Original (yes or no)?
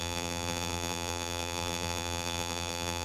no